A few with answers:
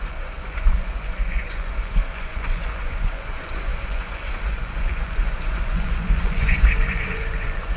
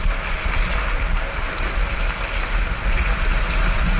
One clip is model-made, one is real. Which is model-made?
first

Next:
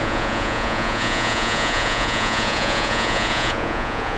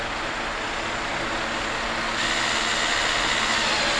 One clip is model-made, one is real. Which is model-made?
first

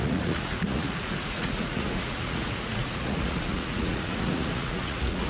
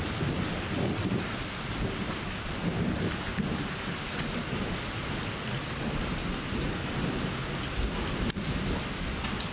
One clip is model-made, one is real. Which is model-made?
first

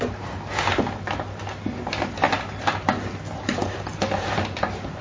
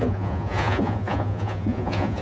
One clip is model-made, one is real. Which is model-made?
second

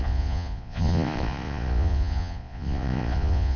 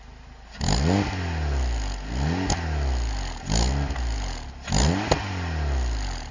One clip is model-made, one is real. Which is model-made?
first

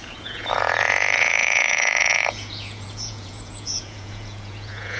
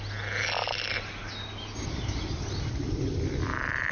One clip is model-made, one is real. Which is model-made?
first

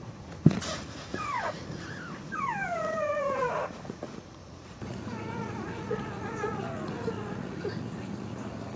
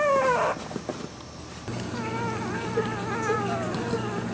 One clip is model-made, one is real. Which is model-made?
first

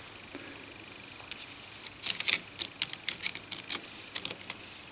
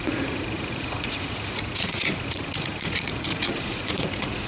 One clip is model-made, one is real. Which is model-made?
second